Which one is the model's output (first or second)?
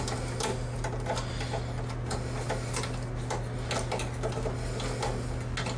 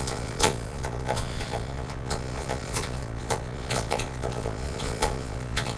second